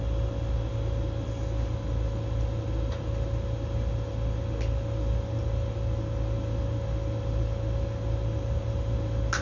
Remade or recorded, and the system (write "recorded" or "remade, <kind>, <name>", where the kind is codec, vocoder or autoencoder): recorded